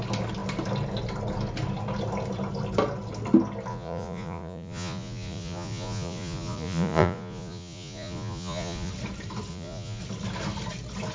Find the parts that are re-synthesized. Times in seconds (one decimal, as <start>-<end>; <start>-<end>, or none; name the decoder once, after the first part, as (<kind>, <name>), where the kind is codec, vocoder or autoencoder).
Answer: 3.7-8.9 (vocoder, Vocos); 9.5-10.0